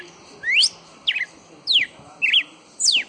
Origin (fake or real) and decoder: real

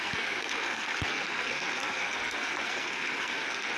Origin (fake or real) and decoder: fake, codec, SNAC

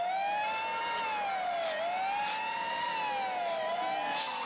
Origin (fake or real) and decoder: real